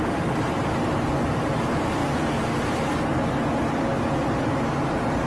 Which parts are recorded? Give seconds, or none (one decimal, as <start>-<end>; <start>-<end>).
2.0-5.3